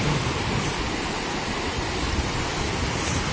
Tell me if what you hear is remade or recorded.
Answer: recorded